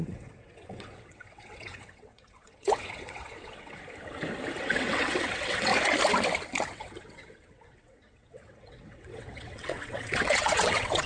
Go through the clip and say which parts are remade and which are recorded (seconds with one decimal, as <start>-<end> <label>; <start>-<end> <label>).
0.0-3.8 remade; 3.8-4.6 recorded; 4.6-5.7 remade; 5.7-6.7 recorded; 6.7-11.1 remade